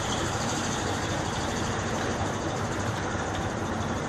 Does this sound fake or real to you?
fake